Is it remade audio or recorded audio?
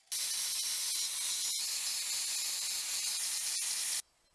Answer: recorded